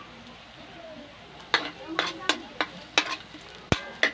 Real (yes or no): yes